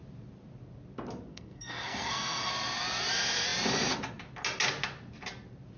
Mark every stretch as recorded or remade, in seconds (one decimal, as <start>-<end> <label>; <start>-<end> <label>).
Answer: 0.0-1.3 recorded; 1.3-2.5 remade; 2.5-5.8 recorded